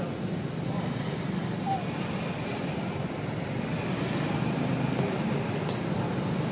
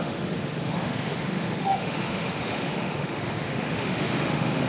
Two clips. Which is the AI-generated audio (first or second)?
second